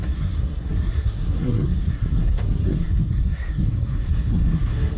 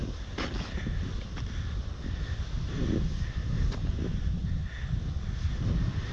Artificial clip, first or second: first